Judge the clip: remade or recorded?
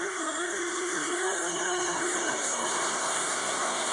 remade